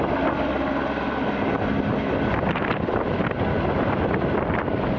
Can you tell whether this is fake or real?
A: real